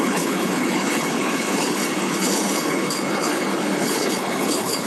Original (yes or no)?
no